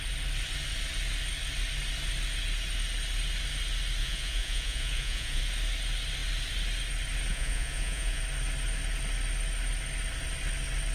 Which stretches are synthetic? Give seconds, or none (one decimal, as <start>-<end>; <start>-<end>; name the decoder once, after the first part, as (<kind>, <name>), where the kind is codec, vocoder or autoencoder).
4.0-5.4 (vocoder, Vocos); 7.3-8.2